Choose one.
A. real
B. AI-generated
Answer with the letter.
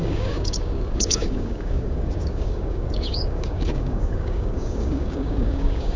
B